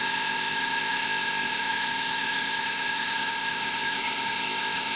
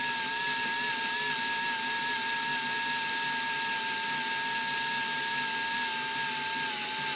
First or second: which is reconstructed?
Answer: first